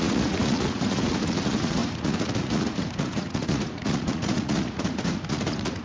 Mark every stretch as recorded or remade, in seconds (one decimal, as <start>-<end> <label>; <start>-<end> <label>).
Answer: 0.0-5.8 remade